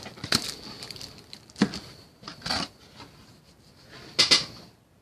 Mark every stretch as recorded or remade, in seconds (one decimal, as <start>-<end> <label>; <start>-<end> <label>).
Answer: 0.0-5.0 recorded

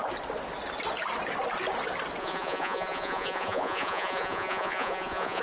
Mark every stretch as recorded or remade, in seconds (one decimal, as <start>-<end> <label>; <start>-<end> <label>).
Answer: 0.0-2.2 recorded; 2.2-5.4 remade

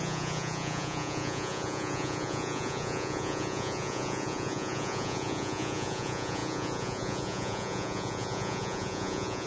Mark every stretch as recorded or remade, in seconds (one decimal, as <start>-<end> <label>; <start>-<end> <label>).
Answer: 0.0-9.5 remade

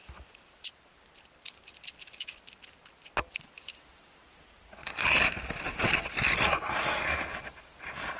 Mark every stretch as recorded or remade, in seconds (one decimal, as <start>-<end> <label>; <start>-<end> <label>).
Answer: 0.0-8.2 recorded

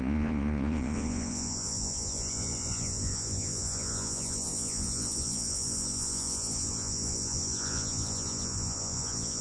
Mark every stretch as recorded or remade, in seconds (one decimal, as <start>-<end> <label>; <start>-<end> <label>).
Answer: 0.0-9.4 remade